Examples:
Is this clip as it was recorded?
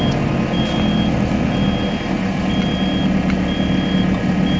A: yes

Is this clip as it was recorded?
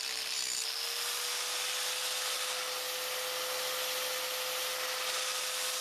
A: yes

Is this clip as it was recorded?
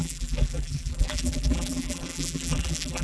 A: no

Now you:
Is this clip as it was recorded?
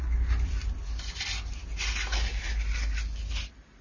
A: yes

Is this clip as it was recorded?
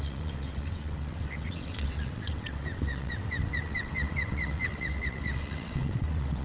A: no